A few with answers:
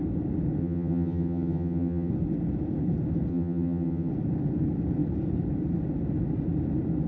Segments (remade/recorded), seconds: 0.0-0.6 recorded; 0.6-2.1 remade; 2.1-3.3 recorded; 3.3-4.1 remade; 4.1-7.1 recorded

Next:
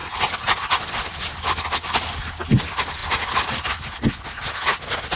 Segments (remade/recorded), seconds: 0.0-5.2 recorded

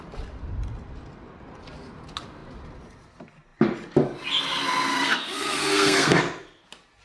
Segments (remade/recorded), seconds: 0.0-4.9 recorded; 4.9-6.2 remade; 6.2-7.0 recorded

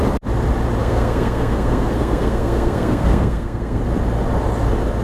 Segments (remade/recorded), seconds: 0.0-0.8 recorded; 0.8-3.8 remade; 3.8-5.0 recorded

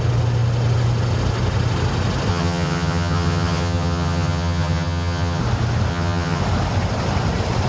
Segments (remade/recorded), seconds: 0.0-2.3 recorded; 2.3-5.4 remade; 5.4-5.9 recorded; 5.9-6.4 remade; 6.4-7.7 recorded

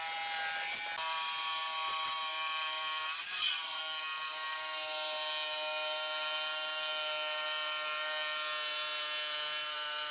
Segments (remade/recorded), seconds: 0.0-3.2 recorded; 3.2-3.8 remade; 3.8-10.1 recorded